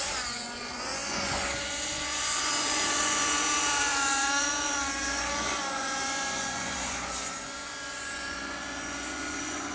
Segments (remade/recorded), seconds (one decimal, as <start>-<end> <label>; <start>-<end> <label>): 0.0-9.7 remade